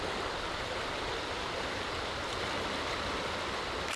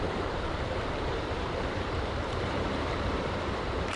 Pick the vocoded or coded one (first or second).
second